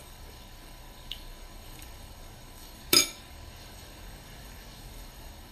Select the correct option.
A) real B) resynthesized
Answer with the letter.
B